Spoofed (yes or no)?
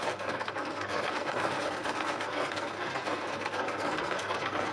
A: yes